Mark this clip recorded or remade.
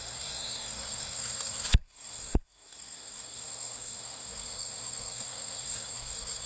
remade